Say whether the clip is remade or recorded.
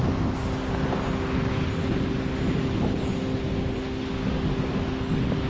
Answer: recorded